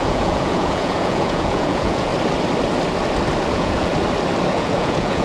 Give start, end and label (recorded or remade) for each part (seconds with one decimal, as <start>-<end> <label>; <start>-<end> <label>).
0.0-2.1 remade; 2.1-3.5 recorded; 3.5-3.9 remade; 3.9-4.5 recorded; 4.5-5.2 remade